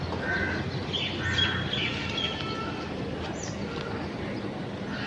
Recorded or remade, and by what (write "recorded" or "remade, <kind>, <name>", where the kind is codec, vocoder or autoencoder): recorded